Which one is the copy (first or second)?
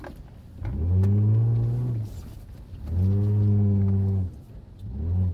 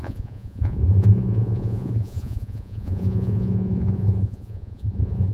second